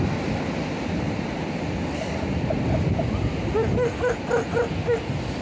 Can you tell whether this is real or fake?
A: real